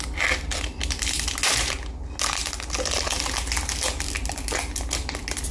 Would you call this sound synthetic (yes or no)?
no